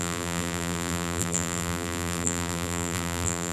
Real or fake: fake